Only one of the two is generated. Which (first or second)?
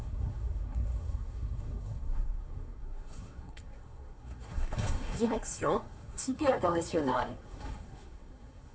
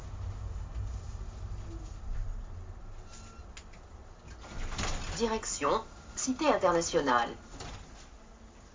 first